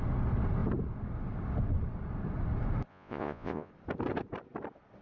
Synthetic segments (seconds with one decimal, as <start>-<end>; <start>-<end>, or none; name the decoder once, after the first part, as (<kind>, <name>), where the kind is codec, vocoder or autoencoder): 2.9-3.7 (vocoder, Vocos)